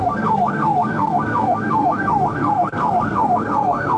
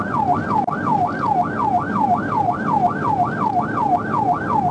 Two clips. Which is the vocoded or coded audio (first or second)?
first